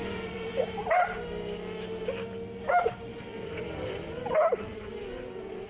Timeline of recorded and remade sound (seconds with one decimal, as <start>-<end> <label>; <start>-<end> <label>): 0.0-0.9 remade; 0.9-3.1 recorded; 3.1-4.8 remade; 4.8-5.7 recorded